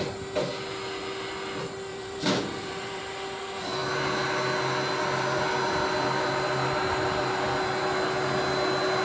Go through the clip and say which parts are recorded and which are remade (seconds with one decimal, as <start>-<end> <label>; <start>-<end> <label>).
0.0-1.9 recorded; 1.9-3.0 remade; 3.0-9.0 recorded